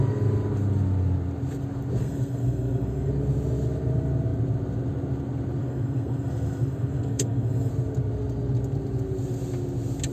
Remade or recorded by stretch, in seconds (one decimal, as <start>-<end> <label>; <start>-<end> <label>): 0.0-2.0 recorded; 2.0-3.1 remade; 3.1-5.6 recorded; 5.6-7.7 remade; 7.7-10.1 recorded